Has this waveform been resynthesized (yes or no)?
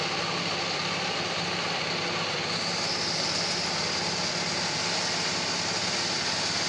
no